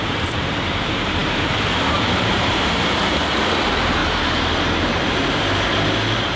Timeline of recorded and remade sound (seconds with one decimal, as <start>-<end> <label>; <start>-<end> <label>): 0.0-6.4 remade